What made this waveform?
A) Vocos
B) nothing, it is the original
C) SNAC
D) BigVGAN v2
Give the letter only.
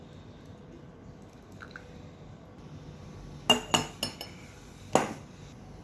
B